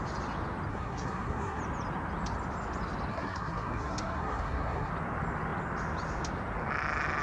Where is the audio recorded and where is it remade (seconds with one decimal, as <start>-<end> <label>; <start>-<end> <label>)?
0.0-0.7 recorded; 0.7-1.6 remade; 1.6-3.1 recorded; 3.1-4.9 remade; 4.9-7.2 recorded